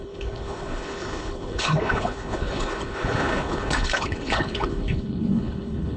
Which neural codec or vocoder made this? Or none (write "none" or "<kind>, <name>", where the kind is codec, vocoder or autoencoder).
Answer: codec, HILCodec